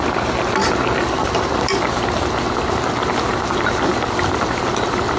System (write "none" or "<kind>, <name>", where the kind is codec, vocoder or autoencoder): none